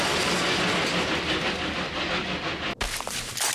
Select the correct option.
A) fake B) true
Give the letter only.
B